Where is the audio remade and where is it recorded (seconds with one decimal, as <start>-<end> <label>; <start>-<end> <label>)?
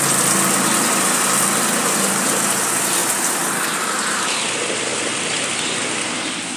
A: 0.0-3.0 recorded; 3.0-4.1 remade; 4.1-4.9 recorded; 4.9-5.5 remade; 5.5-6.6 recorded